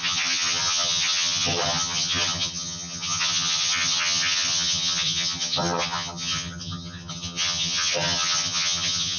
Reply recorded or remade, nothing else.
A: remade